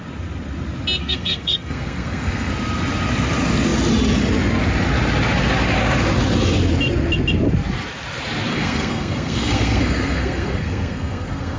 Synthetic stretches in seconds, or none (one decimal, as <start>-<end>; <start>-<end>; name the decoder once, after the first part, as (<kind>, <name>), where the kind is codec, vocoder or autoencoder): 1.0-2.5 (codec, SNAC); 8.5-11.6